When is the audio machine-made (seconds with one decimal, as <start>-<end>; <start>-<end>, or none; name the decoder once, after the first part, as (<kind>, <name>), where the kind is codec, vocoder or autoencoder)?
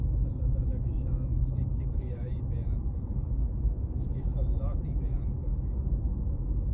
0.0-2.3 (autoencoder, DAC-VAE); 4.0-5.5; 6.0-6.7